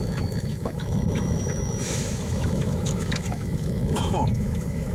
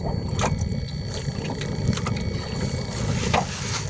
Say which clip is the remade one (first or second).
first